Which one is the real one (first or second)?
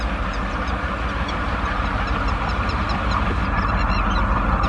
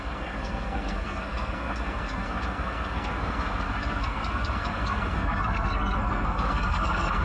first